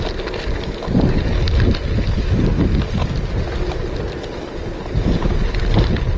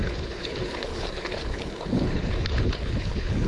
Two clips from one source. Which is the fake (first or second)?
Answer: second